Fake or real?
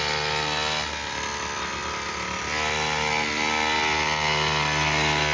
real